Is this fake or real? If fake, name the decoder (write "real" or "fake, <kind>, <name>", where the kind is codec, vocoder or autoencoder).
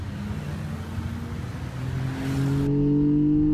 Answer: real